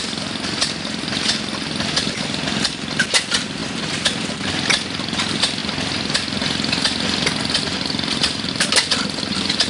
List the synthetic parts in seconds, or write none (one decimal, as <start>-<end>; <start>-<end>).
none